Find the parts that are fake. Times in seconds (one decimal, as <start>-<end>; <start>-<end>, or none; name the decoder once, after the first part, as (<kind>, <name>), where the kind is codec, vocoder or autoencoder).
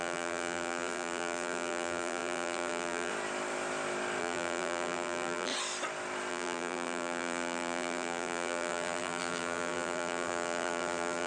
0.0-3.1 (vocoder, BigVGAN v2); 4.2-5.5; 6.3-11.3